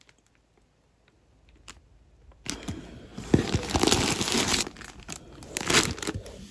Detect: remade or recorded recorded